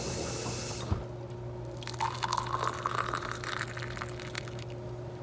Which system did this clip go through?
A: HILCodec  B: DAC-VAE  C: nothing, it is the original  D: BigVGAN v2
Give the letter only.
C